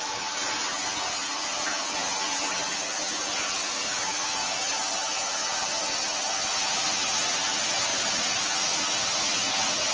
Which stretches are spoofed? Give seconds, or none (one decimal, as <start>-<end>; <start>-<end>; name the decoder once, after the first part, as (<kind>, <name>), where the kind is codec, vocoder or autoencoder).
none